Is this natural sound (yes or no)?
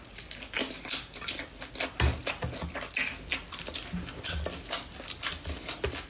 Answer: yes